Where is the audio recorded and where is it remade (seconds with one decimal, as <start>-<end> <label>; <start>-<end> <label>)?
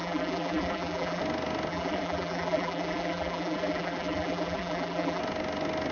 0.0-1.2 remade; 1.2-1.7 recorded; 1.7-5.2 remade; 5.2-5.9 recorded